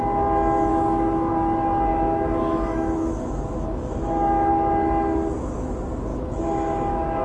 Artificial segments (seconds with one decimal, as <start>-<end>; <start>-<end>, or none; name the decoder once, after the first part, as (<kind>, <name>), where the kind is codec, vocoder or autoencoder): 0.7-1.3 (autoencoder, DAC-VAE); 1.9-4.5; 6.1-7.2